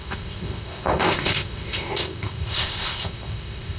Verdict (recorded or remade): remade